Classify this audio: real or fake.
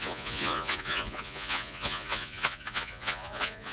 fake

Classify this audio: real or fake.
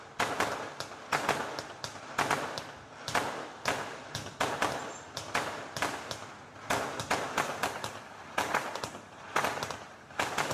real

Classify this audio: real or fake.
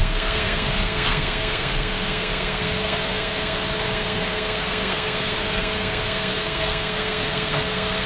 fake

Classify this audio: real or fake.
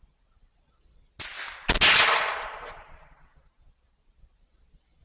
real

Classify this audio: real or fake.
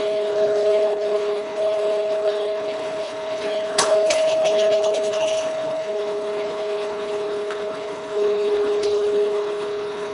fake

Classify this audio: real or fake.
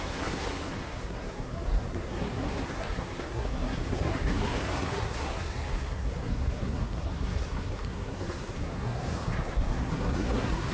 fake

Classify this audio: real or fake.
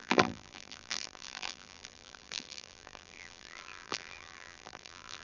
fake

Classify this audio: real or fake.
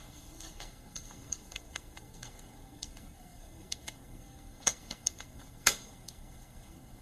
fake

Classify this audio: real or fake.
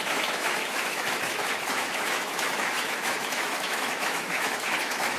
fake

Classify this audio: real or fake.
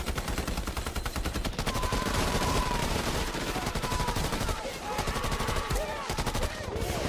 fake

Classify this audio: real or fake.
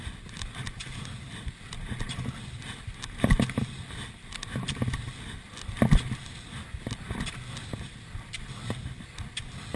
real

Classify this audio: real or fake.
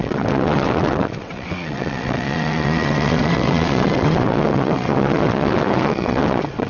fake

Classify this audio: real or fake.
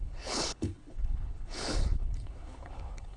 fake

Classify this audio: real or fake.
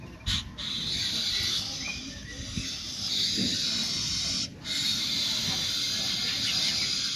real